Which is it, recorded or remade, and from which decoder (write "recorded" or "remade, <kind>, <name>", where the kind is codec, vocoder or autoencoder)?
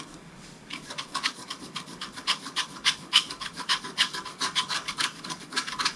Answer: remade, codec, DAC